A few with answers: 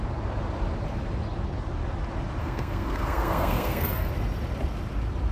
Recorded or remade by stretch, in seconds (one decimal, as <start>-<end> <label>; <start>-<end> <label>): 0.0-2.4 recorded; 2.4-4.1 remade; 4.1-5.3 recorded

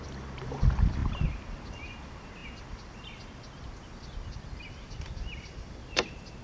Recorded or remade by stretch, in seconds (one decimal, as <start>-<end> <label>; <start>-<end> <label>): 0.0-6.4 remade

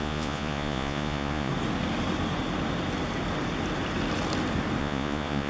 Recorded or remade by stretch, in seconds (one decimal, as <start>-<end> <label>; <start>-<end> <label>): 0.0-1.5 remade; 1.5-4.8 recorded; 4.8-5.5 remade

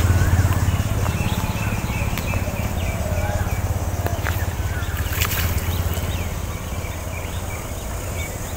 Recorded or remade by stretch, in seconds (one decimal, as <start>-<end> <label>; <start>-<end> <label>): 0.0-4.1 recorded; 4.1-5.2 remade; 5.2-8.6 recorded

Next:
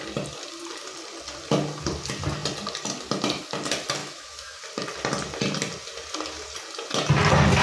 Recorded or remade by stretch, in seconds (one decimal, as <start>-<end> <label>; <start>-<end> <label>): 0.0-4.0 recorded; 4.0-4.6 remade; 4.6-7.6 recorded

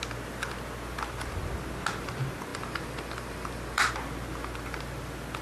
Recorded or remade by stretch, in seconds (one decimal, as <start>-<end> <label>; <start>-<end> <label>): 0.0-2.5 recorded; 2.5-3.9 remade; 3.9-5.4 recorded

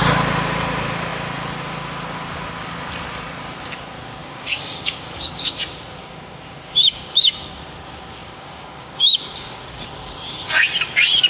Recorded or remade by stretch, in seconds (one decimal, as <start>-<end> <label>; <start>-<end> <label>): 0.0-4.2 recorded; 4.2-5.6 remade; 5.6-6.0 recorded; 6.0-7.6 remade; 7.6-8.2 recorded; 8.2-9.6 remade; 9.6-11.3 recorded

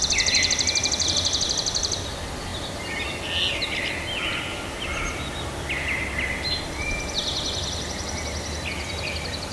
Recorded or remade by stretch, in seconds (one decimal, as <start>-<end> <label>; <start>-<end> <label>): 0.0-9.5 recorded